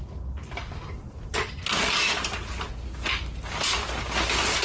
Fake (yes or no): no